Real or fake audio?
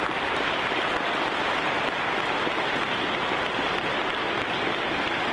real